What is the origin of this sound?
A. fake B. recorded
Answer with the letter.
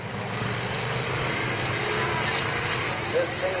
B